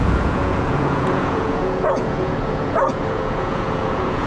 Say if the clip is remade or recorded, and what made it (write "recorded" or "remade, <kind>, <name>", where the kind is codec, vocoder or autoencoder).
remade, vocoder, Vocos